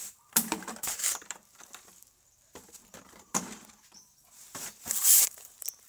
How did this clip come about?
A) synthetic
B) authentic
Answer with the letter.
A